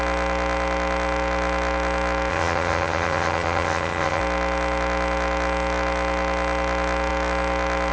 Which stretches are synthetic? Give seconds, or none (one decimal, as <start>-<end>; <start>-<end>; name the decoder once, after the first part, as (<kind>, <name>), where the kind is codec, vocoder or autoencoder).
2.3-4.2 (vocoder, HiFi-GAN)